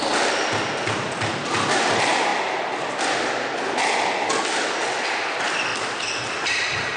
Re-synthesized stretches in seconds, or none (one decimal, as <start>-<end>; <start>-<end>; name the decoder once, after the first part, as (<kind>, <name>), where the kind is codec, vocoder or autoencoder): none